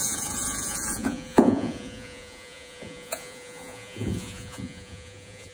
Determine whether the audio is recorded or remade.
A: remade